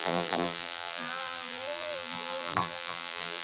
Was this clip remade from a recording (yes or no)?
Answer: yes